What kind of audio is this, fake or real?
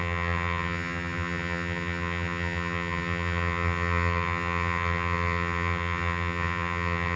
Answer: fake